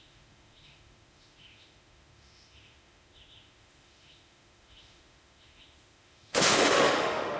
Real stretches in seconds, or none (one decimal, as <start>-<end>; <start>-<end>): none